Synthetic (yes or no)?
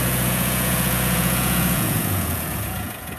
yes